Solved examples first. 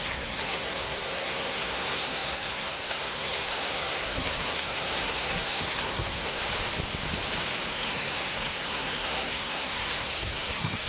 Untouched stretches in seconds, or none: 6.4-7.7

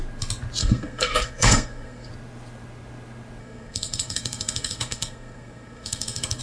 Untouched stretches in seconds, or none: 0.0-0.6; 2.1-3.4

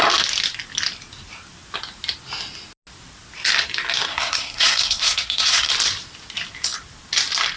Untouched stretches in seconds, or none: 0.0-4.1; 5.7-7.6